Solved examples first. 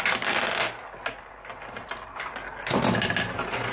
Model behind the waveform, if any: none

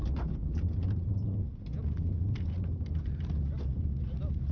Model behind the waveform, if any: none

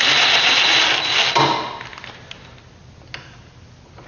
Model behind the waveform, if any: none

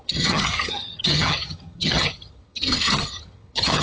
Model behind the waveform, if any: vocoder, HiFi-GAN